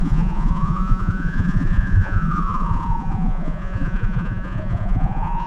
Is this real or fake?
fake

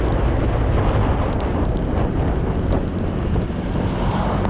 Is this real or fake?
real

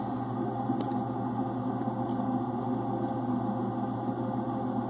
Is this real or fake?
real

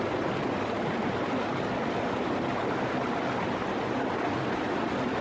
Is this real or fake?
real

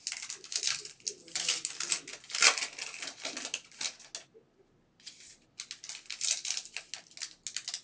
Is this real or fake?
real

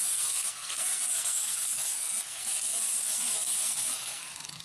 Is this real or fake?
fake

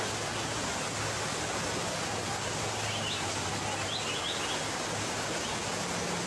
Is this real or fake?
real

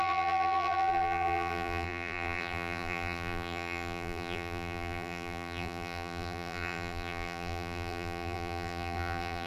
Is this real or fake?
fake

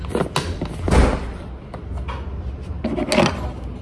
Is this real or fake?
real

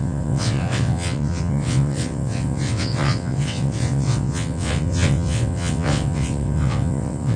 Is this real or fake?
fake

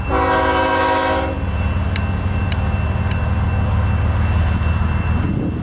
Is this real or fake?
real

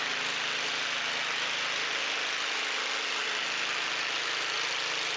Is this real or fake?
real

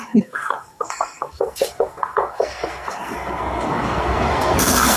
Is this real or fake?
fake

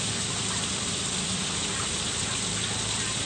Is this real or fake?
real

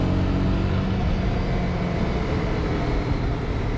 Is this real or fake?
real